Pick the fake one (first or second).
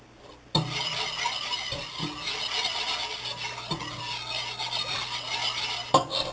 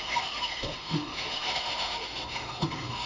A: second